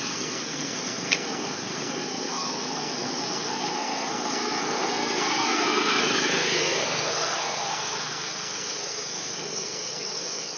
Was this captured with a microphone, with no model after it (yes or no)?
no